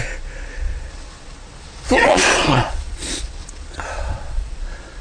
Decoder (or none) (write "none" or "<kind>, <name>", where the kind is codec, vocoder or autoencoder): vocoder, Vocos